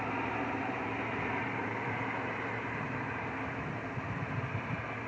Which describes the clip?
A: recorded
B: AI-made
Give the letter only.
B